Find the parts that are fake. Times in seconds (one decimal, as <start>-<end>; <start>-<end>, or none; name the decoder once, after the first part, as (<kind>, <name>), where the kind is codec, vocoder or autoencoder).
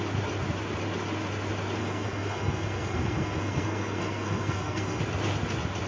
1.8-5.0 (codec, SNAC)